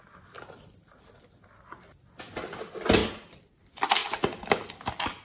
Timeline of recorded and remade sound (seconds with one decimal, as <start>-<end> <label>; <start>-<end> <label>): 0.0-5.2 recorded